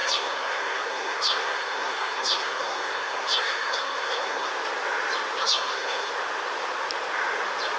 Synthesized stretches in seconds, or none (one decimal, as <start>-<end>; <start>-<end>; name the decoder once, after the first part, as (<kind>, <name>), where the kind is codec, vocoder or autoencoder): 0.0-4.5 (codec, SNAC); 5.4-6.1